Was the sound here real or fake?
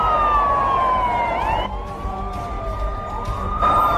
fake